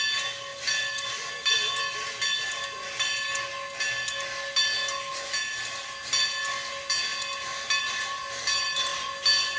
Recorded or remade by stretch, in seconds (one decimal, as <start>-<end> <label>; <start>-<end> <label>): 0.0-9.6 recorded